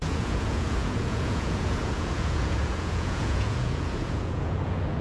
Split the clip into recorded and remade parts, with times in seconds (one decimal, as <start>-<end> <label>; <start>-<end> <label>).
0.0-5.0 remade